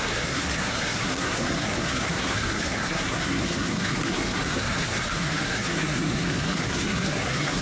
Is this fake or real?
fake